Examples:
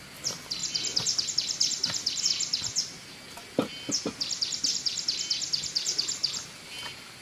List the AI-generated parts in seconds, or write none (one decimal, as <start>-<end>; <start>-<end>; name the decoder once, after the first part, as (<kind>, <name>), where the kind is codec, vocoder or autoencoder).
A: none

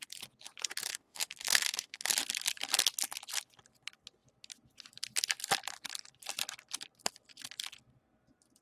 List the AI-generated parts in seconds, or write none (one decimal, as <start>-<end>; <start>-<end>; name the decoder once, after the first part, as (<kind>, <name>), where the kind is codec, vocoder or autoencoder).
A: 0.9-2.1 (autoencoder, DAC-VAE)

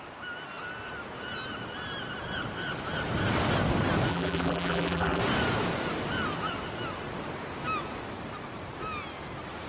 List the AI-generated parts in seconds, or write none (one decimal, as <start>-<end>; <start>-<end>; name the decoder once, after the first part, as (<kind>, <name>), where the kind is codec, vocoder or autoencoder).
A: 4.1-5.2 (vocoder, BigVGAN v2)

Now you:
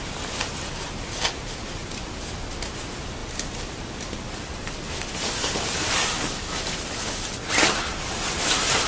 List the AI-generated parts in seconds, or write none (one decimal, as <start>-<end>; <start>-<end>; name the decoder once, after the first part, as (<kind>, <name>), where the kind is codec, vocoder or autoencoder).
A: 3.2-5.1 (vocoder, BigVGAN v2)

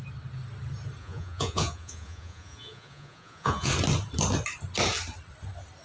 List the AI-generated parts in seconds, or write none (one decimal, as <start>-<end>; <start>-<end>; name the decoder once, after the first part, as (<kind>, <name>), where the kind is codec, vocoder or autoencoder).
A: 1.0-3.7 (vocoder, Vocos)